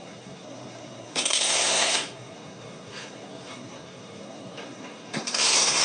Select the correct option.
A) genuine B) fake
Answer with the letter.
B